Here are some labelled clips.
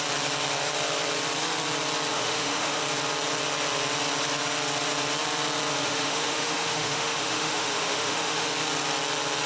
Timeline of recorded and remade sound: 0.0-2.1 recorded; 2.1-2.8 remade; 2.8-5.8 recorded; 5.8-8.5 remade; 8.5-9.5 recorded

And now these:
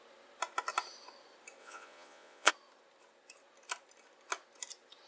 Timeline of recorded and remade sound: 0.0-1.6 recorded; 1.6-2.5 remade; 2.5-5.1 recorded

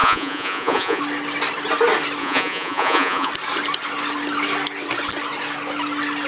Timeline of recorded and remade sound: 0.0-1.0 remade; 1.0-2.2 recorded; 2.2-3.3 remade; 3.3-6.3 recorded

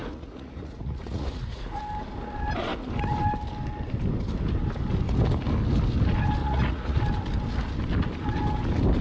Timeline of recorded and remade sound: 0.0-1.8 remade; 1.8-6.4 recorded; 6.4-7.0 remade; 7.0-9.0 recorded

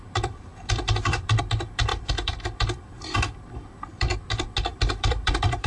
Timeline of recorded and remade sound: 0.0-4.1 remade; 4.1-4.7 recorded; 4.7-5.7 remade

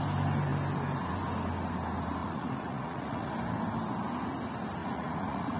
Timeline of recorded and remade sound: 0.0-2.2 recorded; 2.2-3.3 remade; 3.3-4.8 recorded; 4.8-5.6 remade